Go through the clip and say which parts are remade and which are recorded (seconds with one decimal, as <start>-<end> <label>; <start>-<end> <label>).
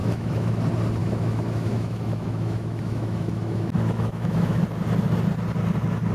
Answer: 0.0-0.6 remade; 0.6-1.0 recorded; 1.0-4.6 remade; 4.6-6.1 recorded